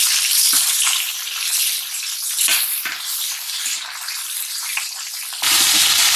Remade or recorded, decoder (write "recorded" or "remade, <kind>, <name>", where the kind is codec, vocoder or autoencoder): remade, vocoder, BigVGAN v2